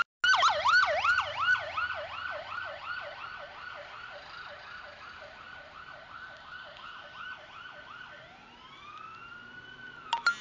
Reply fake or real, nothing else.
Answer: real